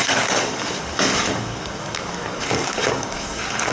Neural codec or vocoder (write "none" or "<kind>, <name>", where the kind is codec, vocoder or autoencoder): codec, DAC